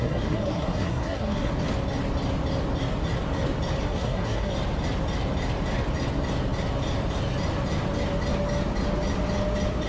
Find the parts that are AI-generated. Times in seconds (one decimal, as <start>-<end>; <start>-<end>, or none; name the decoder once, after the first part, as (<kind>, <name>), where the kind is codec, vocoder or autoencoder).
0.0-1.5 (codec, SNAC); 3.8-4.5